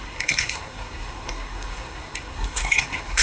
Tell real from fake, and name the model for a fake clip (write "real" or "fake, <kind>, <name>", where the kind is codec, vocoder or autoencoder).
fake, codec, SNAC